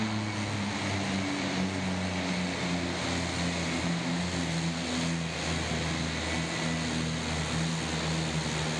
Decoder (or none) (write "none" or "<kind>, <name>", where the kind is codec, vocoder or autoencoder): none